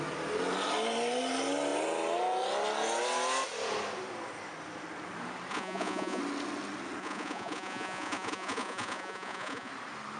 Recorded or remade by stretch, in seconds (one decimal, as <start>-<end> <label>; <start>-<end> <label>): 0.0-5.5 recorded; 5.5-6.2 remade; 6.2-7.0 recorded; 7.0-9.7 remade; 9.7-10.2 recorded